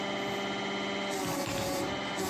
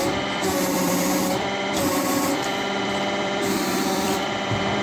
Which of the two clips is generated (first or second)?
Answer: second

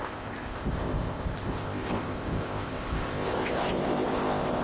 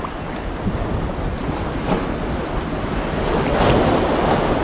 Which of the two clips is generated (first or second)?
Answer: first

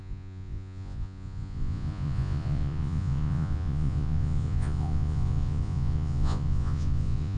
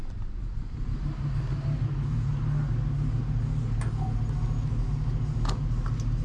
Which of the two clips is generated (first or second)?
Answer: first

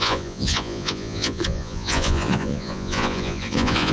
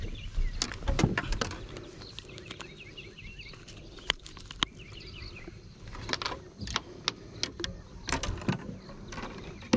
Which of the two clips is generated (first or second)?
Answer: first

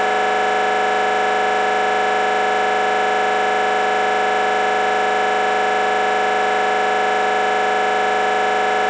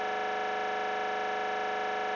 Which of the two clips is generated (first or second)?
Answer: first